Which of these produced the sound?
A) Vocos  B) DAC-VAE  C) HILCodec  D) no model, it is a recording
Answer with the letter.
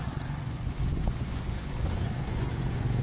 A